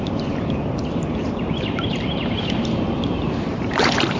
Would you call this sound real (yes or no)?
no